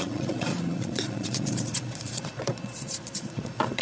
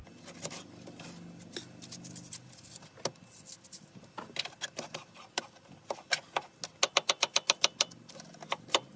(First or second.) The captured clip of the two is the second